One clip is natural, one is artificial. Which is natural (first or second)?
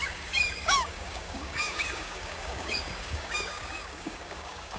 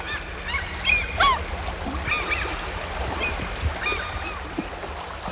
second